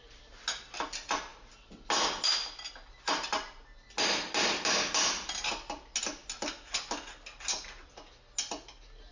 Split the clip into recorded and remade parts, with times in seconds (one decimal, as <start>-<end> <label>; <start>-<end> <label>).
0.0-9.1 recorded